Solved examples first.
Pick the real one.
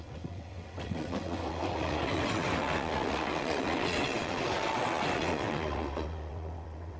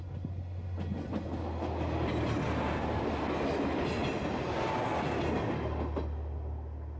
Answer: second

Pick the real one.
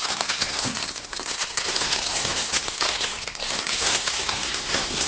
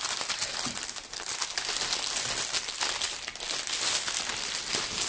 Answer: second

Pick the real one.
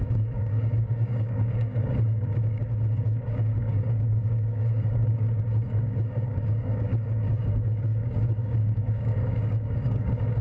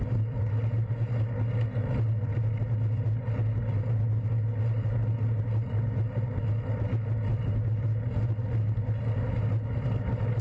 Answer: second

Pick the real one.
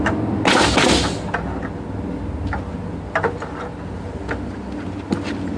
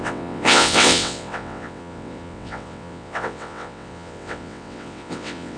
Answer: first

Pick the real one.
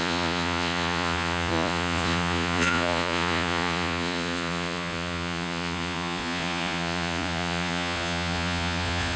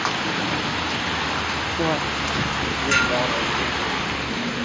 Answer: second